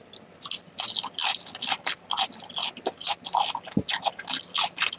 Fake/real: real